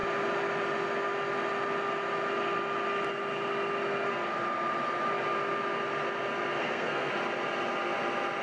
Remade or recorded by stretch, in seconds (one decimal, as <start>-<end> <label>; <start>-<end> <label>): 0.0-6.6 recorded; 6.6-7.1 remade; 7.1-8.4 recorded